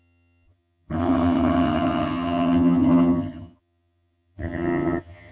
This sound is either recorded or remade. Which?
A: remade